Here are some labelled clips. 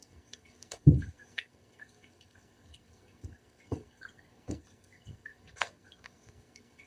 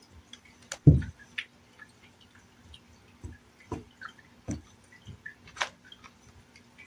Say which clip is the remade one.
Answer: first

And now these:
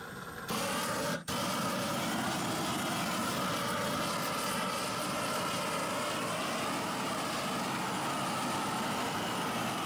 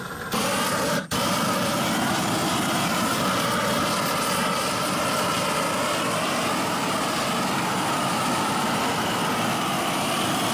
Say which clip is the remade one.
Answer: second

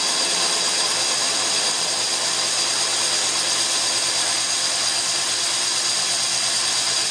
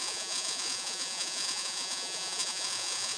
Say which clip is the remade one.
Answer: second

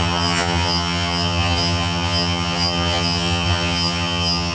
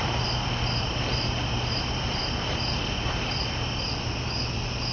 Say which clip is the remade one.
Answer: first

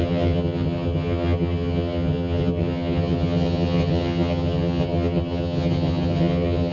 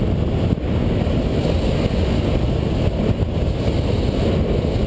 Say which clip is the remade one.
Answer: first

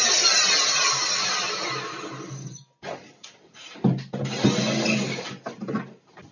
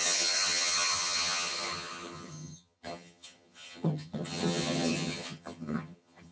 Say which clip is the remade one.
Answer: second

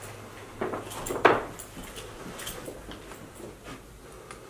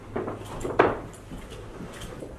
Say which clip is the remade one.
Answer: second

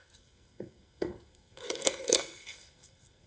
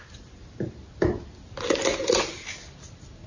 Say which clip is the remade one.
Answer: first